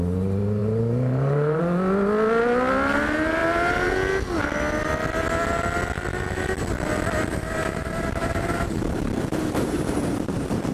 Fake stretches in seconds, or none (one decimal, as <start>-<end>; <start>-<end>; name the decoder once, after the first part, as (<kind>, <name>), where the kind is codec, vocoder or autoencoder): 0.6-1.6 (vocoder, BigVGAN v2); 3.4-3.9; 7.3-10.7